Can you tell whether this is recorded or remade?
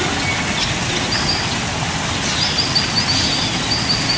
recorded